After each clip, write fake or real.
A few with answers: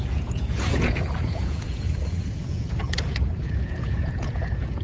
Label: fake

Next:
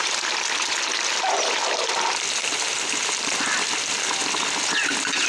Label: real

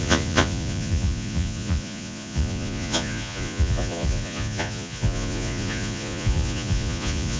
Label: fake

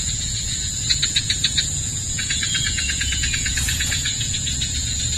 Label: fake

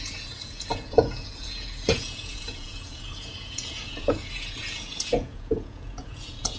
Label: fake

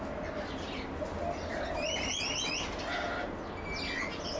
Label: real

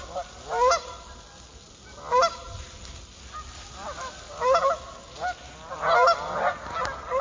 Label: real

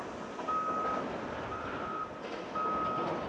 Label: real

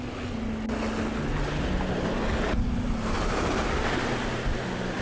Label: real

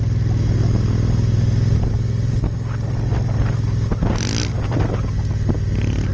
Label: real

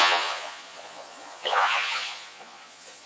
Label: fake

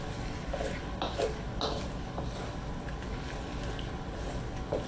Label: real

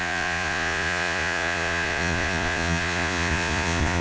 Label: fake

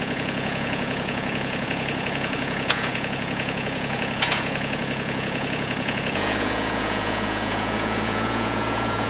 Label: fake